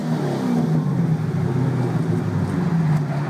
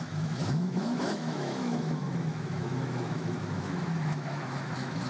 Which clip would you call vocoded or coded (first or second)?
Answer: second